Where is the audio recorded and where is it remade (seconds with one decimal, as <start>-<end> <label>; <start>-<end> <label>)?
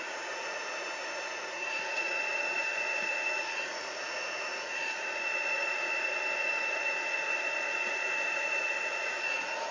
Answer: 0.0-9.7 remade